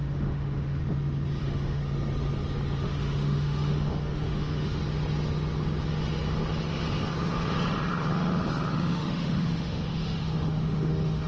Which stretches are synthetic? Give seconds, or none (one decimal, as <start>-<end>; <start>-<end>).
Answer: 0.0-0.8; 1.4-1.8; 2.8-4.8; 8.7-11.3